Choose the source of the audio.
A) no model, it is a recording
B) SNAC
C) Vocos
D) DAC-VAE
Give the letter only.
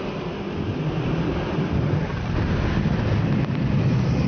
A